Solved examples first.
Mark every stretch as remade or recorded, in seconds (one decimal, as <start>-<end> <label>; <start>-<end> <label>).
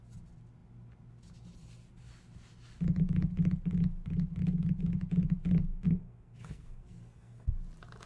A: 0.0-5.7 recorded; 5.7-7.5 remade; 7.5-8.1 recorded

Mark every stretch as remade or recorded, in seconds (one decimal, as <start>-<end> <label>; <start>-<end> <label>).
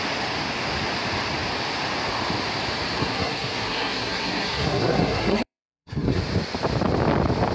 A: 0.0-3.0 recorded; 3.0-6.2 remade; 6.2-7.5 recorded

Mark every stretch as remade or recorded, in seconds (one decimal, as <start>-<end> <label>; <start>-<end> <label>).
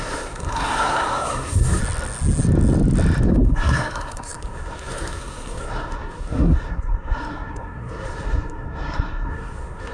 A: 0.0-1.8 remade; 1.8-3.3 recorded; 3.3-9.9 remade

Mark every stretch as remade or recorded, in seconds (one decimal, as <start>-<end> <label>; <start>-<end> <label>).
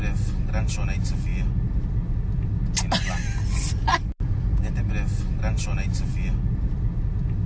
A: 0.0-7.5 recorded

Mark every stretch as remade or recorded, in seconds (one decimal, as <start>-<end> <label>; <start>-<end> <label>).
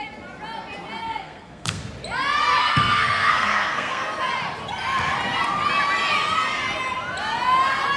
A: 0.0-1.0 recorded; 1.0-1.8 remade; 1.8-2.6 recorded; 2.6-4.0 remade; 4.0-8.0 recorded